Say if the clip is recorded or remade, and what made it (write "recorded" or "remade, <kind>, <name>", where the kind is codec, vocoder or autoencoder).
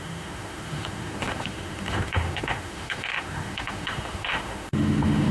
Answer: remade, autoencoder, DAC-VAE